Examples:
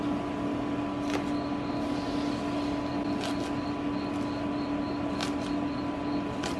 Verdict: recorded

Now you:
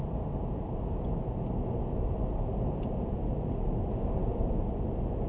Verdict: recorded